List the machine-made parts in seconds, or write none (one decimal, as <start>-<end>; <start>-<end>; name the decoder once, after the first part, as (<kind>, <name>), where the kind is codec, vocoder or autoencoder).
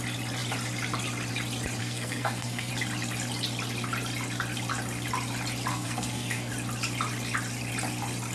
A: 1.8-2.7 (codec, SNAC); 5.7-6.5